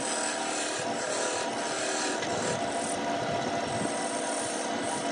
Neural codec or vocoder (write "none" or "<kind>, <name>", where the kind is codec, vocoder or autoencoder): none